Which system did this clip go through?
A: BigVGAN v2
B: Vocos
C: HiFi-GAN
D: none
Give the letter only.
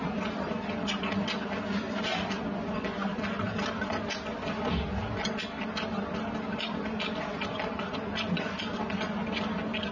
D